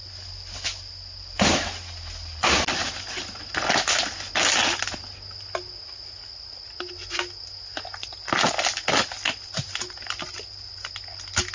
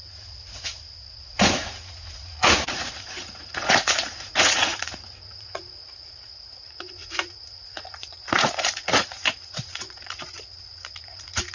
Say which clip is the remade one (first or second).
second